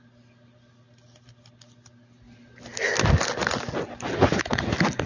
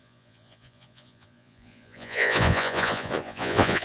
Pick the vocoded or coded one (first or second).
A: second